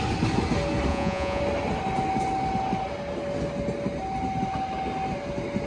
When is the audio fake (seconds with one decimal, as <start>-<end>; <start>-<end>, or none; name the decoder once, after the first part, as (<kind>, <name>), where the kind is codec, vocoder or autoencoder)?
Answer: 0.9-1.4 (vocoder, Vocos)